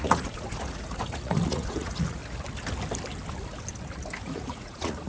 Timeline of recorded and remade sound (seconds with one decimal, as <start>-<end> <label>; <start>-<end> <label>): 0.0-2.2 remade; 2.2-4.2 recorded; 4.2-5.1 remade